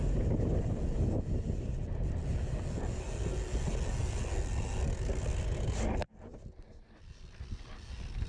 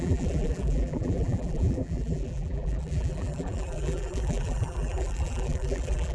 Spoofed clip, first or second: second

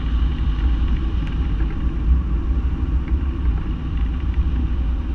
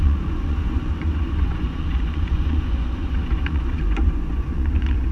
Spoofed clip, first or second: second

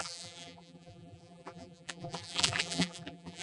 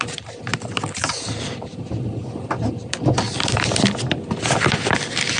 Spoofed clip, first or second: first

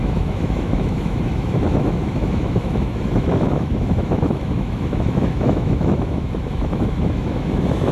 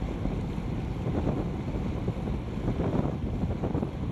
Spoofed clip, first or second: first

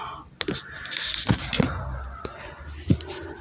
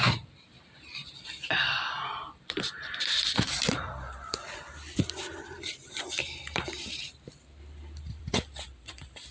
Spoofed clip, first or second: second